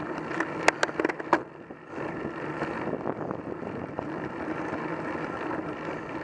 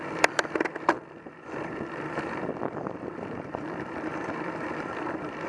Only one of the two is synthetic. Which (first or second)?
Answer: second